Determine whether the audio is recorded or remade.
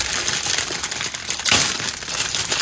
recorded